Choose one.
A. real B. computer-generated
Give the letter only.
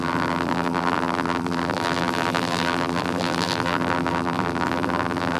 B